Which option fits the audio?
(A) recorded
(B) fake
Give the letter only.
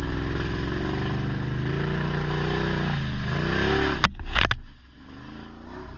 A